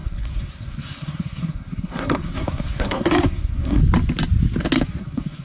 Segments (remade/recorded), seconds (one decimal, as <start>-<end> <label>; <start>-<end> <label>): 0.0-3.8 remade; 3.8-5.0 recorded; 5.0-5.4 remade